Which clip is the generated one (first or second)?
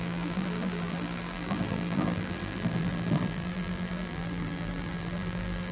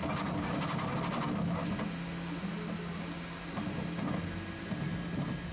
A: first